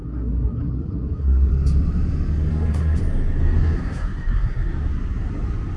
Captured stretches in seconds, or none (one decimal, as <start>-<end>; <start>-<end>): 1.5-2.5; 3.0-3.6; 4.7-5.8